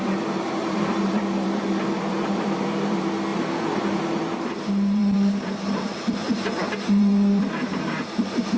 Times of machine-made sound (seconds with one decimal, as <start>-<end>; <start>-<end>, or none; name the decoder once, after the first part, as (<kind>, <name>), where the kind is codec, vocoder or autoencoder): 0.0-8.6 (vocoder, BigVGAN v2)